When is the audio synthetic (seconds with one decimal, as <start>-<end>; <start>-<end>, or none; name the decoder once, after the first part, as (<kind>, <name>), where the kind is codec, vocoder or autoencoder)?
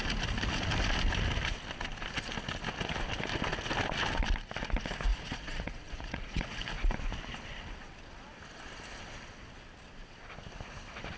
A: 5.1-6.4 (vocoder, Vocos)